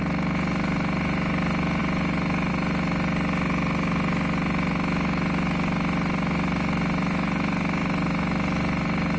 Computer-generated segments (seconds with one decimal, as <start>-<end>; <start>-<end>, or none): none